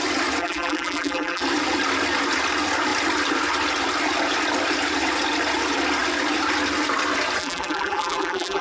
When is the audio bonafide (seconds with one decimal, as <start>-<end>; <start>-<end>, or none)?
0.0-0.4; 1.4-7.4

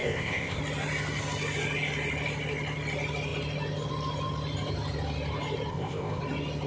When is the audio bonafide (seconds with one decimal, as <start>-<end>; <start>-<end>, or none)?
0.6-5.7; 6.2-6.7